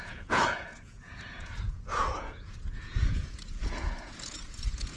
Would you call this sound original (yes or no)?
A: no